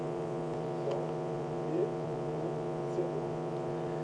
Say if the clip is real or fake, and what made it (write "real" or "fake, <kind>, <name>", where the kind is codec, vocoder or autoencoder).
fake, vocoder, Vocos